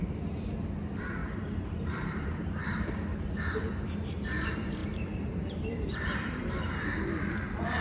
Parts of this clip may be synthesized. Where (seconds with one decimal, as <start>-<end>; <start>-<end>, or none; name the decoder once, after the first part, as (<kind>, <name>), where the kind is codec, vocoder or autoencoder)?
0.0-7.8 (vocoder, BigVGAN v2)